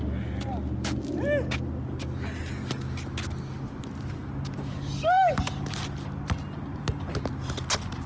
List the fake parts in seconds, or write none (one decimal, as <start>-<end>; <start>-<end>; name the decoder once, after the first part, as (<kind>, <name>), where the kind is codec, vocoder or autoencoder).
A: 4.7-5.7 (codec, DAC)